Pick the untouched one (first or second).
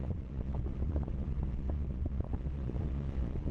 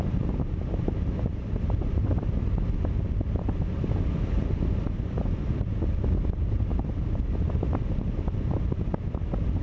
second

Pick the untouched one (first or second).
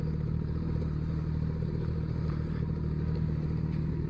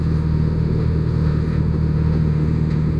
first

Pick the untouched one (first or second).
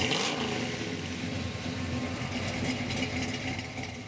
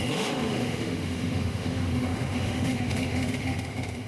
first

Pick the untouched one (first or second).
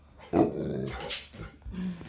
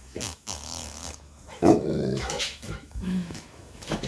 first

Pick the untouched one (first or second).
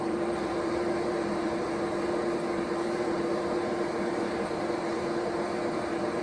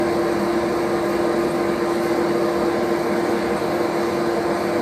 second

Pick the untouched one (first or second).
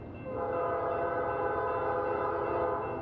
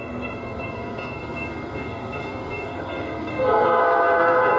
first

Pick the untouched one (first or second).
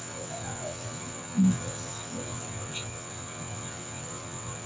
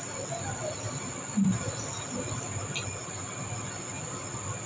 second